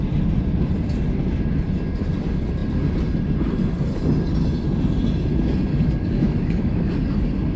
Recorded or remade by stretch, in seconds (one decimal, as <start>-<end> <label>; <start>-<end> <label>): 0.0-5.7 recorded; 5.7-7.6 remade